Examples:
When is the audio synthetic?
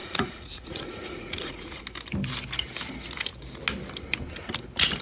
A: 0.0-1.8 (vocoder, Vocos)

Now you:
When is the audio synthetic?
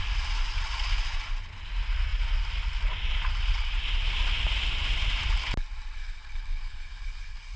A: none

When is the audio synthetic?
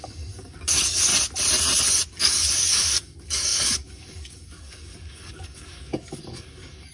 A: 0.0-1.1 (codec, DAC); 2.1-6.9